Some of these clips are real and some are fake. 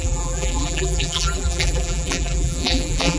fake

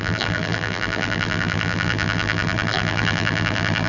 fake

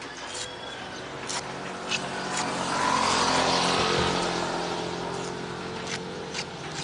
real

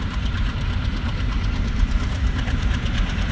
fake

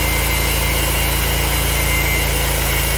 real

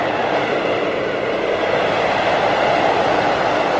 real